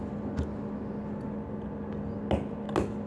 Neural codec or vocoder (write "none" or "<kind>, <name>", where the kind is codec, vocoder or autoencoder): none